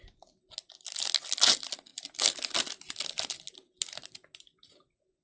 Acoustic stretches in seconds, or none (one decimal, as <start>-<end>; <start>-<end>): 0.0-5.2